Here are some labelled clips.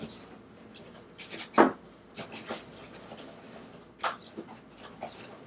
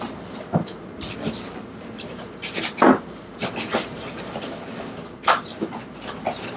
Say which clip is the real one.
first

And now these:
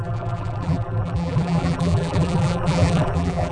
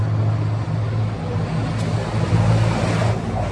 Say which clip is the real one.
second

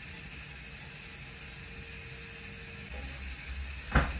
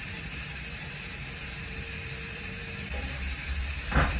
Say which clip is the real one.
first